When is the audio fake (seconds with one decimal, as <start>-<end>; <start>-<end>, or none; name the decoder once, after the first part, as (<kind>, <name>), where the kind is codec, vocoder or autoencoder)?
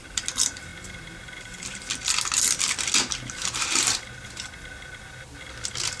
none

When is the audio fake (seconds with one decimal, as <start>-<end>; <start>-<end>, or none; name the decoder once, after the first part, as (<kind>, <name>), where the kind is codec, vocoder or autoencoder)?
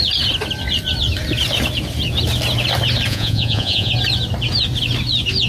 3.1-3.9 (vocoder, Vocos)